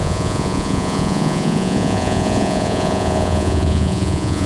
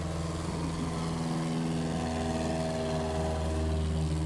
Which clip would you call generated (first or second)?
first